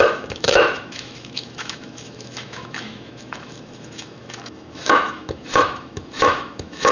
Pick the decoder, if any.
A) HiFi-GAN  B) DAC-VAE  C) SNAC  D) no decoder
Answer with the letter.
B